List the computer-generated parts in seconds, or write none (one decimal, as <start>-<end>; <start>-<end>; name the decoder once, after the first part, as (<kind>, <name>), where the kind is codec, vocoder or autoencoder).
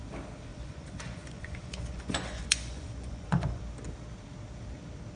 0.5-3.6 (vocoder, Vocos)